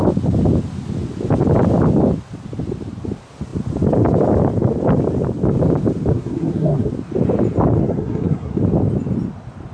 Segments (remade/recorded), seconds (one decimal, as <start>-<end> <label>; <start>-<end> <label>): 0.0-6.1 recorded; 6.1-6.9 remade; 6.9-7.8 recorded; 7.8-8.6 remade; 8.6-9.7 recorded